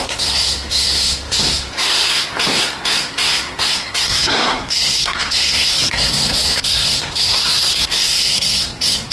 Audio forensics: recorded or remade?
remade